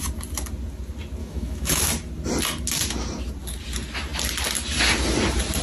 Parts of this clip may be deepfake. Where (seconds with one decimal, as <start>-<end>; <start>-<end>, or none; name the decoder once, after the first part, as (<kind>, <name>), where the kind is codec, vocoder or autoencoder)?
1.2-1.8 (autoencoder, DAC-VAE)